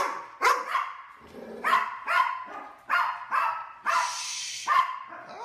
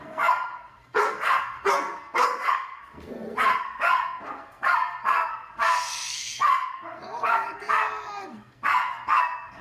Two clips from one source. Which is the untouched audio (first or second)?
first